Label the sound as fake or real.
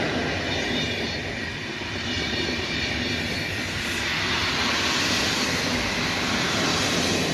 real